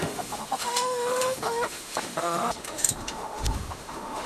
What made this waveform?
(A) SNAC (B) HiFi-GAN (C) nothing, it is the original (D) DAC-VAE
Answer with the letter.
D